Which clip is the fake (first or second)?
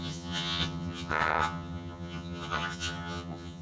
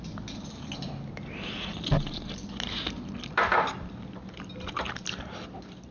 first